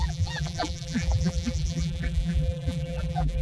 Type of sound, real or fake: fake